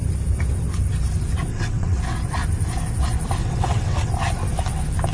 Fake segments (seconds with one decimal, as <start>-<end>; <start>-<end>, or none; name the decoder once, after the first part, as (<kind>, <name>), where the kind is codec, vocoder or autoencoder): 1.5-2.0 (vocoder, WaveNeXt); 3.4-4.1